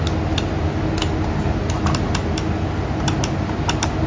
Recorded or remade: recorded